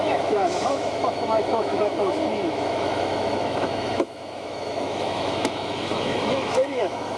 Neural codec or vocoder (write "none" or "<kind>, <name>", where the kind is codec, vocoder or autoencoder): autoencoder, DAC-VAE